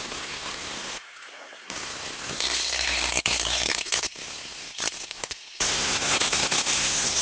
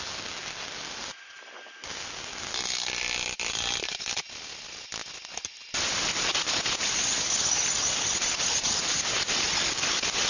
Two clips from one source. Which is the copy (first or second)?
first